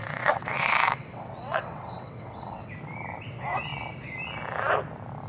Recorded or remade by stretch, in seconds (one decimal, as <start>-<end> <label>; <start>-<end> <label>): 0.0-2.7 remade; 2.7-5.3 recorded